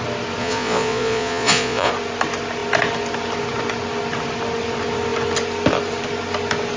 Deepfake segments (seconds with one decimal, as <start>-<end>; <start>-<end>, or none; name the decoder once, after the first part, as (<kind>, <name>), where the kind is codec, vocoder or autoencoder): 0.4-1.9 (vocoder, Vocos)